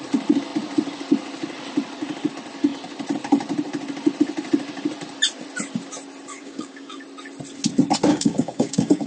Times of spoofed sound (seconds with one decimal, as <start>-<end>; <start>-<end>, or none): 6.3-7.0; 8.1-9.1